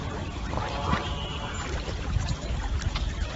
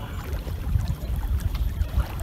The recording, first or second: first